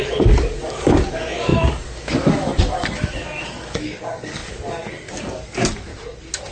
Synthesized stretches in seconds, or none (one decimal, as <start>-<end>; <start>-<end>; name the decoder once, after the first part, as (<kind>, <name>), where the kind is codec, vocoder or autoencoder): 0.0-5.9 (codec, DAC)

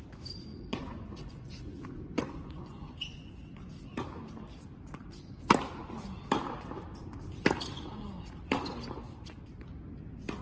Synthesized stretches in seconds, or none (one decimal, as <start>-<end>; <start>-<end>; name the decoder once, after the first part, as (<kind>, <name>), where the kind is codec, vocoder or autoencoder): 0.5-3.3 (vocoder, Vocos)

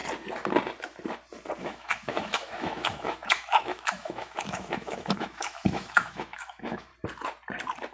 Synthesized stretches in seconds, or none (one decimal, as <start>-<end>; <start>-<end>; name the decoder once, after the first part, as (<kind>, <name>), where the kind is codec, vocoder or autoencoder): 1.6-6.9 (autoencoder, DAC-VAE)

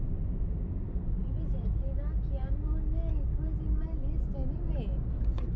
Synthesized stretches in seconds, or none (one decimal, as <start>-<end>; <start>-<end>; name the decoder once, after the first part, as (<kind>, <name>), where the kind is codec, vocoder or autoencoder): none